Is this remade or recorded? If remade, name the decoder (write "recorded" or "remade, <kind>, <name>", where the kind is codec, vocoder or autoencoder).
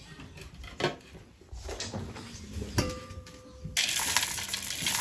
recorded